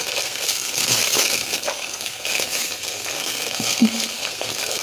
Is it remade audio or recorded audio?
remade